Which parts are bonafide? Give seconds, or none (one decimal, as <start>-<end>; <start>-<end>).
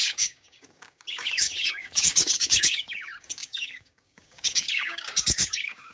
none